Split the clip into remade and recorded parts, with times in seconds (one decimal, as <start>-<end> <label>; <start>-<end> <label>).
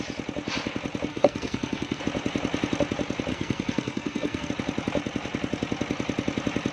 0.0-1.1 recorded; 1.1-2.0 remade; 2.0-3.3 recorded; 3.3-4.5 remade; 4.5-6.7 recorded